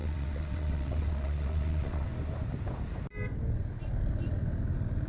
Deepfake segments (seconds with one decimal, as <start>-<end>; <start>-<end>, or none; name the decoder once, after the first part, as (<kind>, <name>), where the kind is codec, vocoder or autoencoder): 0.0-2.1 (vocoder, WaveNeXt)